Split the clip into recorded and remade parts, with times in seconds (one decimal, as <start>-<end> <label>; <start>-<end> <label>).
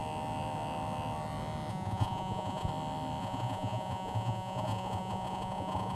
0.0-1.7 recorded; 1.7-2.7 remade; 2.7-3.2 recorded; 3.2-5.9 remade